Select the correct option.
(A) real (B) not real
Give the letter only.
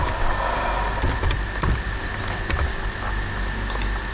A